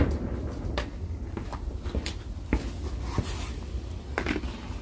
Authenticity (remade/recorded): recorded